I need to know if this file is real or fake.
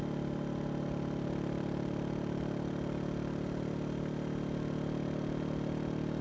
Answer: real